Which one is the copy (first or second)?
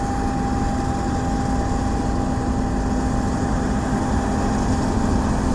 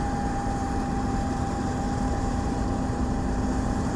second